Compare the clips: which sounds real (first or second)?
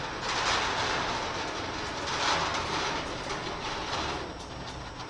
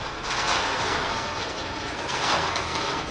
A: first